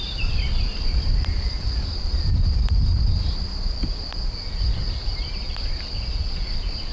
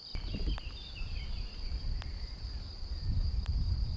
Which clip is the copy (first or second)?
second